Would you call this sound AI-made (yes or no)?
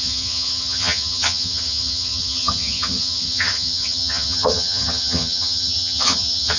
yes